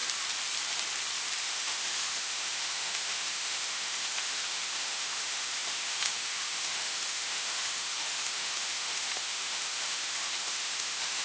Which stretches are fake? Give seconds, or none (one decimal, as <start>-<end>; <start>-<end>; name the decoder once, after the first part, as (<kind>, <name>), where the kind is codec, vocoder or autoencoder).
1.4-11.2 (autoencoder, DAC-VAE)